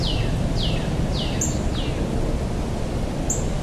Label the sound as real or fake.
real